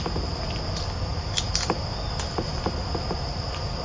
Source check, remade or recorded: recorded